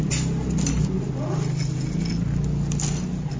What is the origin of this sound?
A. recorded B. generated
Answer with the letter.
A